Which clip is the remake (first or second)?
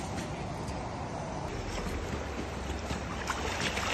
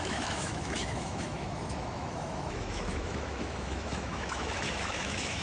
second